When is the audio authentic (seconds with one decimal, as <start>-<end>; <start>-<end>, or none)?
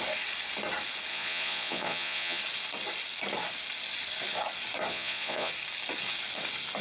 0.0-1.1; 2.4-4.9; 5.5-6.8